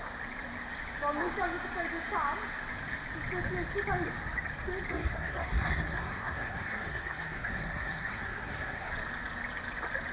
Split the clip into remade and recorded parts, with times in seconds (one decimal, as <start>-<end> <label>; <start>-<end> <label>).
0.0-4.9 recorded; 4.9-8.9 remade; 8.9-10.1 recorded